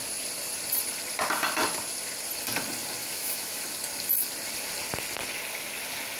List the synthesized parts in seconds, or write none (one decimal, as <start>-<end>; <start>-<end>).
3.0-3.6